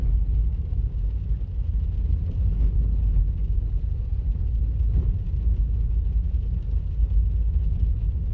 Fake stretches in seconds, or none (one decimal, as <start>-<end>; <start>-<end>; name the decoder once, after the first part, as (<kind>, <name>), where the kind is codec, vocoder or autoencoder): none